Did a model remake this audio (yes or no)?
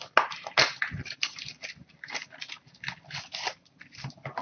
no